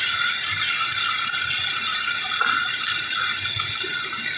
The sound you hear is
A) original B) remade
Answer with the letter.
A